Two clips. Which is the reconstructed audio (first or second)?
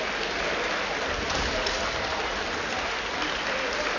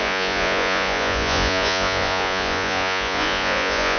second